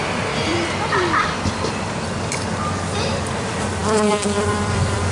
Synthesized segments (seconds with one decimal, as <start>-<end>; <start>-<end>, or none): 3.1-3.8; 4.5-5.1